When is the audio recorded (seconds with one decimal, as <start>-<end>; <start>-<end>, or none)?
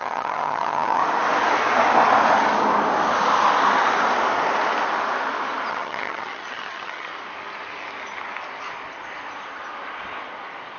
1.0-5.7; 7.1-10.8